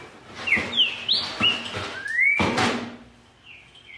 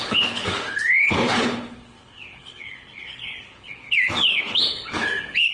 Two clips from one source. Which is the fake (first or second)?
second